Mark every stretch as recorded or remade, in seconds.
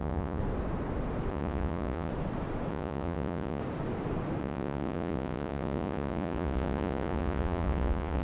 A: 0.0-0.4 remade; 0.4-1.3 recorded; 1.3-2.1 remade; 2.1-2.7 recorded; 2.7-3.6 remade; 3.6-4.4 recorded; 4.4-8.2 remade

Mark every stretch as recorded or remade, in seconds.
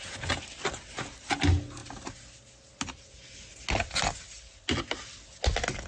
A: 0.0-5.9 recorded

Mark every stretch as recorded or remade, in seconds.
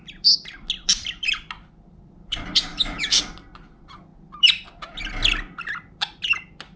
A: 0.0-2.7 recorded; 2.7-3.2 remade; 3.2-6.8 recorded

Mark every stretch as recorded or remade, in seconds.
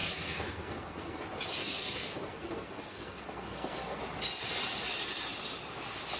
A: 0.0-1.2 remade; 1.2-1.6 recorded; 1.6-4.0 remade; 4.0-6.2 recorded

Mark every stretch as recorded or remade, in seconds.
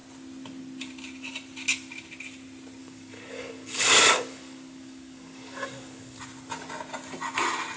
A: 0.0-2.8 recorded; 2.8-6.2 remade; 6.2-7.8 recorded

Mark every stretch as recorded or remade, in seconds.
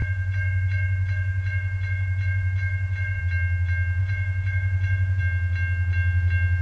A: 0.0-3.2 remade; 3.2-4.0 recorded; 4.0-5.2 remade; 5.2-6.6 recorded